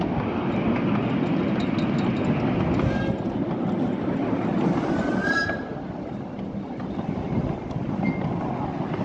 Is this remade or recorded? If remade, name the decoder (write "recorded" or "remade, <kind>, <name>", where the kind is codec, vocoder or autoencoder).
recorded